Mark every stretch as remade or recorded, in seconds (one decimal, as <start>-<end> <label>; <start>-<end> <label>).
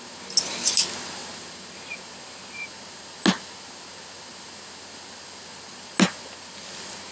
0.0-7.1 recorded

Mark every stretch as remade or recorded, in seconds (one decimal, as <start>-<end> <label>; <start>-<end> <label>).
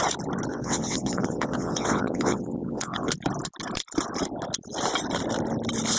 0.0-0.5 recorded; 0.5-3.1 remade; 3.1-6.0 recorded